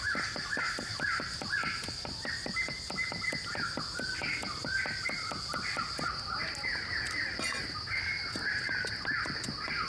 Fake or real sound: real